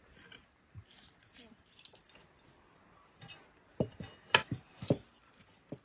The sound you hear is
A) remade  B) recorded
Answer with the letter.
B